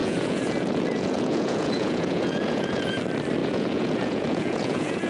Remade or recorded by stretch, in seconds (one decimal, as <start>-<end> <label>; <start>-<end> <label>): 0.0-3.0 remade; 3.0-3.4 recorded; 3.4-5.1 remade